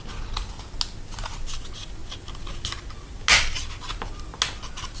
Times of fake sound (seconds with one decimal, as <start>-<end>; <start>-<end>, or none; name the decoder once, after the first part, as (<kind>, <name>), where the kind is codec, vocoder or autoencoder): none